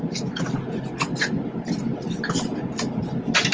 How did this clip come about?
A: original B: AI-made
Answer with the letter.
A